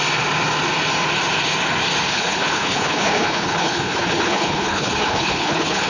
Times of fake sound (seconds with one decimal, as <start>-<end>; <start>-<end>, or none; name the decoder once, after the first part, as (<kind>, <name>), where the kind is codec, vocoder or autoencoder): 2.1-5.9 (codec, HILCodec)